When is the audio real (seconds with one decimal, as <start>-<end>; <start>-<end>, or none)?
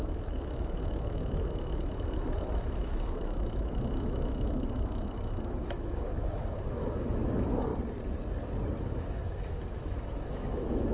7.7-8.8